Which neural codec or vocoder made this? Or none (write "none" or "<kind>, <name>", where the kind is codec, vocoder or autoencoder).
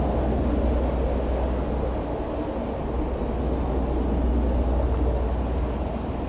none